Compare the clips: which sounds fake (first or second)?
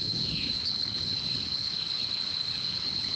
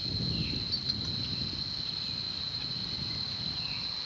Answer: first